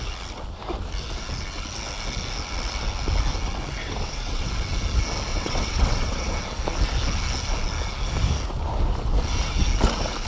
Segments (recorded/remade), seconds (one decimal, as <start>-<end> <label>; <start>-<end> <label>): 0.0-3.8 recorded; 3.8-4.5 remade; 4.5-5.3 recorded; 5.3-6.3 remade; 6.3-10.3 recorded